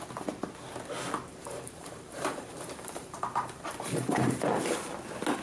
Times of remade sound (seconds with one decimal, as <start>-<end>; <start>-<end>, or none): 1.4-4.6